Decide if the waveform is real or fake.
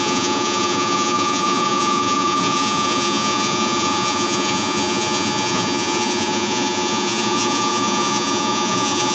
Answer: fake